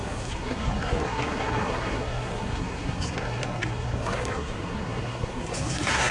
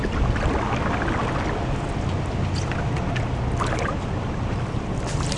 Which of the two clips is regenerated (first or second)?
first